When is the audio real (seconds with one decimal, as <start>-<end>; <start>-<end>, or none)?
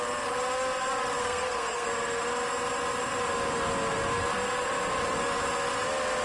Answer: 0.0-1.2; 1.9-6.2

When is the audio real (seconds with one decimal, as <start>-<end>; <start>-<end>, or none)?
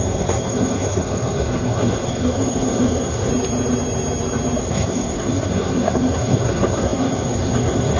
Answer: 3.3-4.6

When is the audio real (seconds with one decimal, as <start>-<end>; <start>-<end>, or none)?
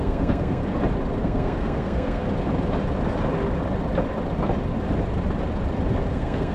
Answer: 0.6-1.2; 2.2-6.1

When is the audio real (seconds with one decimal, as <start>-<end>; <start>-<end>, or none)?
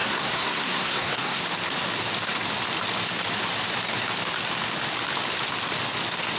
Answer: 1.4-6.4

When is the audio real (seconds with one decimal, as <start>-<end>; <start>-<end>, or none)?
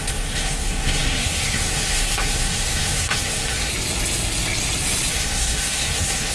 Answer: 3.7-5.1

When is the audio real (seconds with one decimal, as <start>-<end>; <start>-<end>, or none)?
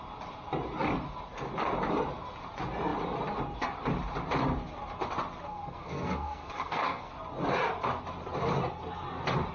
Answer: 0.0-5.5; 7.1-9.5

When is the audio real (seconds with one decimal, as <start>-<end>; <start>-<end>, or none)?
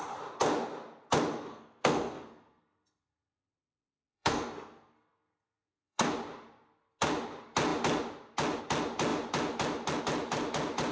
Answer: 0.0-1.3; 6.1-10.9